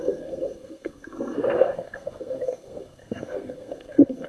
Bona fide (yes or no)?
no